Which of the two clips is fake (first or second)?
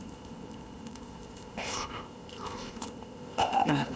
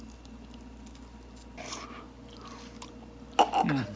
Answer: first